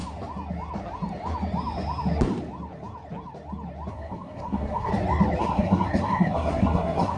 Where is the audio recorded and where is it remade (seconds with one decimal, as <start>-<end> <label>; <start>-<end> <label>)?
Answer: 0.0-3.9 recorded; 3.9-4.9 remade; 4.9-5.4 recorded; 5.4-7.2 remade